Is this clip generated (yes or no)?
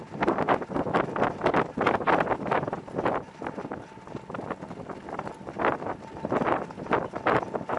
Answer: no